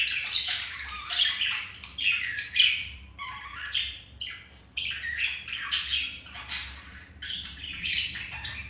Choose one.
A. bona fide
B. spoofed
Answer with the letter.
B